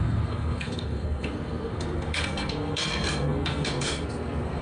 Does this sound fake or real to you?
fake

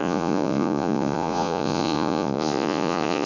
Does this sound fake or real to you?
fake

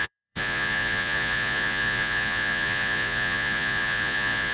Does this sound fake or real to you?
fake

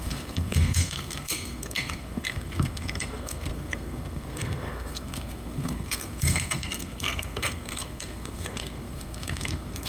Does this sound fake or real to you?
fake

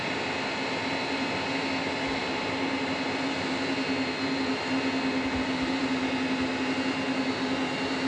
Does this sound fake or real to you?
real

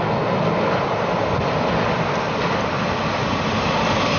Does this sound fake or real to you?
real